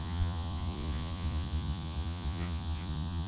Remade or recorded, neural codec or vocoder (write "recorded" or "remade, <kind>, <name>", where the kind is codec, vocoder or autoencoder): remade, vocoder, Vocos